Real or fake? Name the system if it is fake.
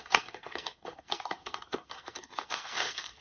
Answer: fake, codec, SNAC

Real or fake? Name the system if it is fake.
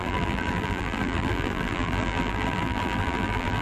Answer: fake, vocoder, BigVGAN v2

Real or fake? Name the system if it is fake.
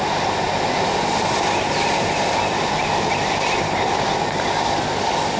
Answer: real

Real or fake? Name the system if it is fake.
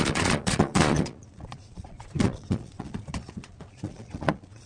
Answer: fake, vocoder, Vocos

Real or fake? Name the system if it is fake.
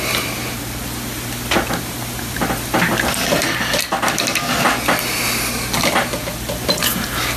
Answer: real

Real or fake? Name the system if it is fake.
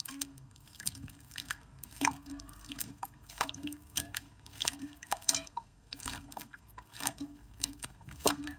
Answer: fake, codec, SNAC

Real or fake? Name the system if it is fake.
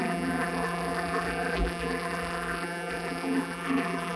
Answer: fake, vocoder, BigVGAN v2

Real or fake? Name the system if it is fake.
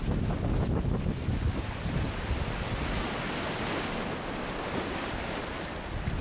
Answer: real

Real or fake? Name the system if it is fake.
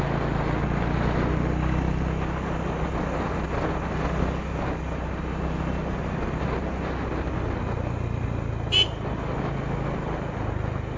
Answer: real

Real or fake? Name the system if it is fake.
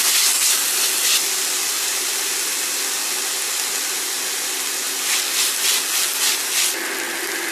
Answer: real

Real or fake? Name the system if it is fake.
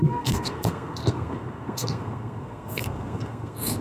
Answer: fake, codec, SNAC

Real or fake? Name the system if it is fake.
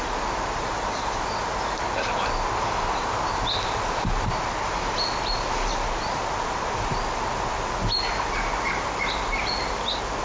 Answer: real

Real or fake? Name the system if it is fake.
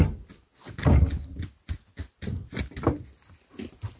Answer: real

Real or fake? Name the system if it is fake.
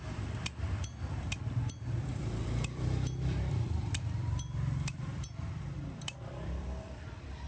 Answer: fake, vocoder, BigVGAN v2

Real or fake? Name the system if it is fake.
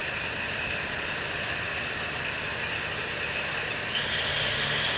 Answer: real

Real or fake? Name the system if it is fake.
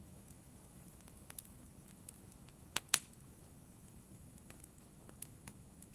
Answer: fake, autoencoder, DAC-VAE